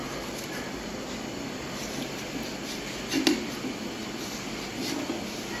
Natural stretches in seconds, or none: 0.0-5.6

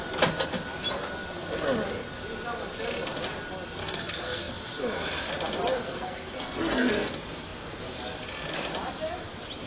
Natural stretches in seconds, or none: 0.0-3.8; 4.5-5.8; 7.1-9.7

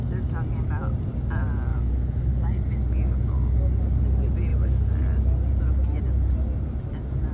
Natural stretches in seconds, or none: 0.0-1.7; 2.3-7.3

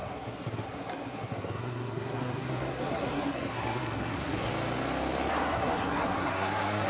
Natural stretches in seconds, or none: 4.5-5.3

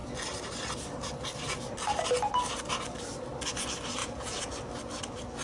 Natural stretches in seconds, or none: 0.0-4.0; 4.5-5.4

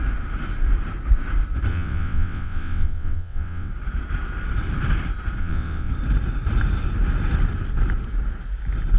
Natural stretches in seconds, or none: 0.0-1.7; 3.7-5.4; 5.9-9.0

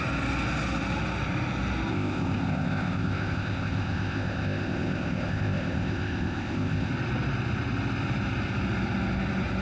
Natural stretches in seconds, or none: 0.0-1.9; 6.9-9.6

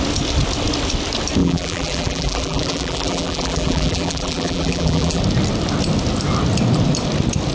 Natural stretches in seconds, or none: 0.0-1.4; 5.2-7.5